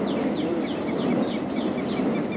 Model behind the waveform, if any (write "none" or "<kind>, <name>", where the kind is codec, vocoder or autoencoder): none